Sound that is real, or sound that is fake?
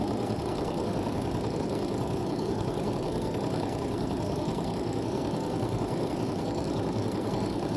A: fake